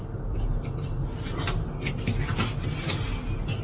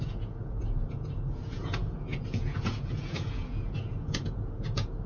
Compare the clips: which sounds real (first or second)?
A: first